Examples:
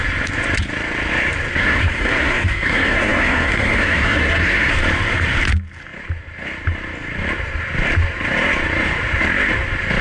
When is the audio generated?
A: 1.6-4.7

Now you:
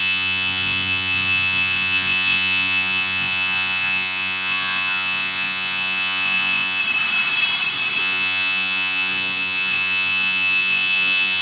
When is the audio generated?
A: 0.0-6.8; 8.0-11.4

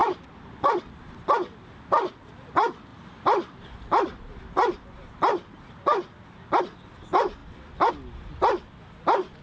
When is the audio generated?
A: 0.0-0.8; 2.9-6.6; 7.4-7.9

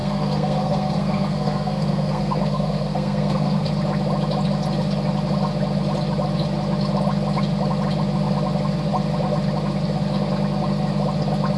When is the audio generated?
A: 0.0-3.7

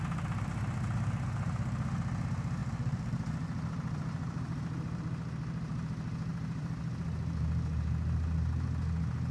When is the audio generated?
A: 2.6-5.0; 6.3-7.0

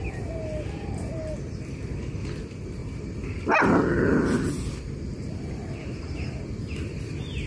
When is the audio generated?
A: 2.8-4.5; 5.8-7.1

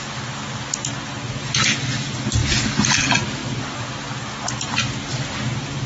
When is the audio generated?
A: none

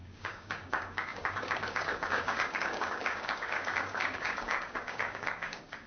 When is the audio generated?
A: 0.0-5.9